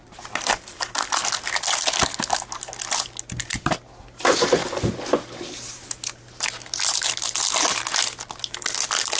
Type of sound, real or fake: real